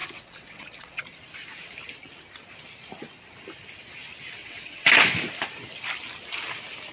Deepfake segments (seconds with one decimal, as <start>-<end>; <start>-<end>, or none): 0.0-1.0; 4.4-4.9